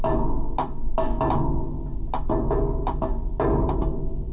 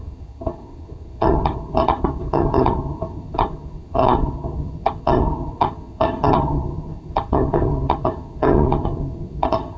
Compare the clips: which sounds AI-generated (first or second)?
second